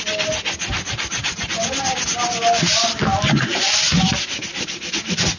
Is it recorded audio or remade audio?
recorded